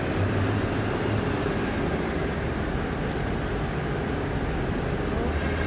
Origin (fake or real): real